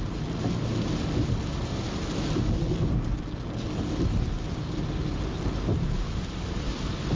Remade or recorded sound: recorded